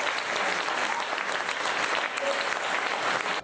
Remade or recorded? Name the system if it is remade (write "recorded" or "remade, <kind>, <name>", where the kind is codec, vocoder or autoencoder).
recorded